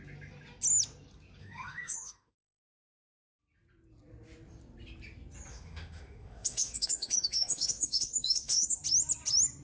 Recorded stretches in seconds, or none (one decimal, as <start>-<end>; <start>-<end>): 0.0-1.4; 2.6-5.5; 8.8-9.6